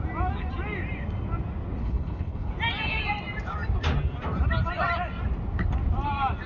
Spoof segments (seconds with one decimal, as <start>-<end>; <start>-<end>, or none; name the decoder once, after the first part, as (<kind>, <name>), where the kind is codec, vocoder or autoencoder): 1.8-2.5 (codec, HILCodec)